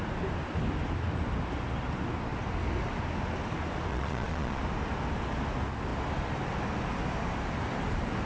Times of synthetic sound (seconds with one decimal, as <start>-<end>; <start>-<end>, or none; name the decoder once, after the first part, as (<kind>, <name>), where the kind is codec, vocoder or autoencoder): 3.9-4.6 (vocoder, Vocos)